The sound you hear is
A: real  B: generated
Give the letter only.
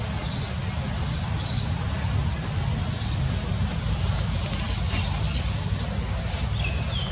A